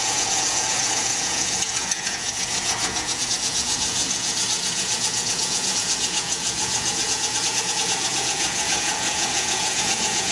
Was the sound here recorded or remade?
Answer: remade